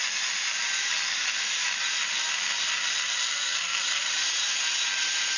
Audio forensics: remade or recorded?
recorded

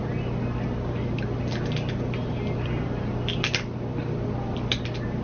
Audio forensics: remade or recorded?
recorded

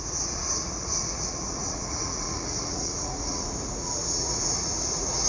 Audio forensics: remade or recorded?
remade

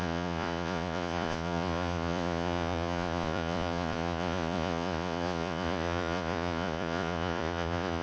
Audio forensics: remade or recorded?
remade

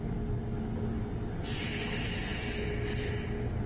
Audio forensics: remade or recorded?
recorded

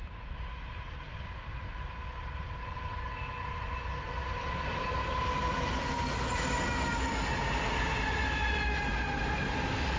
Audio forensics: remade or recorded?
recorded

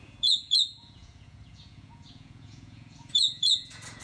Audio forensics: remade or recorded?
remade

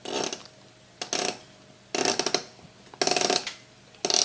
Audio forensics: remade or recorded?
recorded